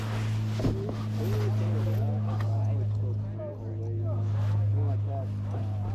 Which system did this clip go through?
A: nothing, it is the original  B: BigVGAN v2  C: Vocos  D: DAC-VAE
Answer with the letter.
A